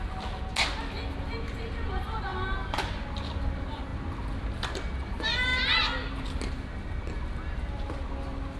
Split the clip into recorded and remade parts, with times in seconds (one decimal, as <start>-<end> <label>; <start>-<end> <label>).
0.0-8.6 recorded